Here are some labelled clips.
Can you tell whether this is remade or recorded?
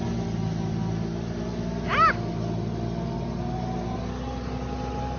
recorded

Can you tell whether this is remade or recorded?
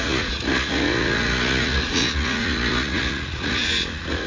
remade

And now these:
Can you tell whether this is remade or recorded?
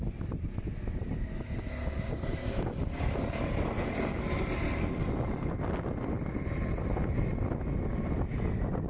recorded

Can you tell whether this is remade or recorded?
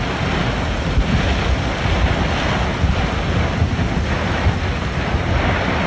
recorded